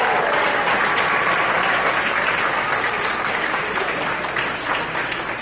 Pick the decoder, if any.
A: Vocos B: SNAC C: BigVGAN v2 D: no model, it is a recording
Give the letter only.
D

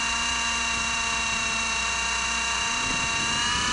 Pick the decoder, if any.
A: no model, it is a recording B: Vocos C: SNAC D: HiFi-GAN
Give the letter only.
A